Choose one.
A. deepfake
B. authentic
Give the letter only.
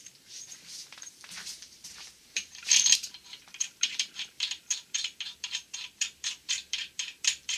A